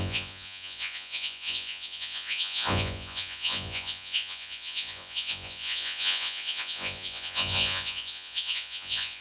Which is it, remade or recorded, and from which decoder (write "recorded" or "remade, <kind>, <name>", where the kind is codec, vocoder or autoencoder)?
remade, vocoder, Vocos